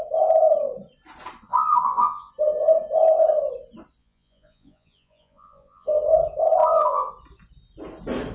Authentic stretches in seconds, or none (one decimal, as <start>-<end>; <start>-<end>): 0.0-1.5; 2.3-4.0; 6.0-6.6; 7.1-8.3